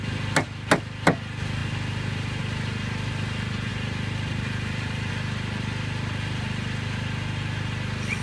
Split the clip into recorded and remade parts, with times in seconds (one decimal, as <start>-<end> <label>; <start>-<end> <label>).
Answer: 0.0-3.7 recorded; 3.7-5.1 remade; 5.1-8.2 recorded